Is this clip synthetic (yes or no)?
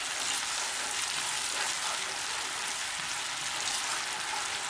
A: no